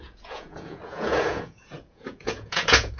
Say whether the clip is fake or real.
fake